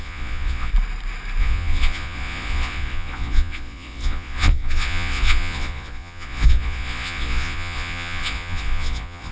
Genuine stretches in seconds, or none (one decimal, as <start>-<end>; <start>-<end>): 0.7-1.4